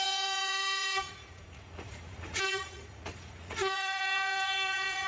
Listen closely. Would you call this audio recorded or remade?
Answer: remade